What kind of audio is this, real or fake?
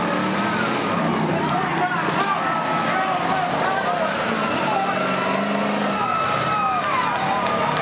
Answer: real